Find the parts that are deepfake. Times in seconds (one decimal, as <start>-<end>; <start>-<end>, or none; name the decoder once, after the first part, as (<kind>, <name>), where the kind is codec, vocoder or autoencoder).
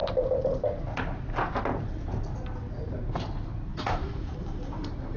3.7-5.2 (vocoder, BigVGAN v2)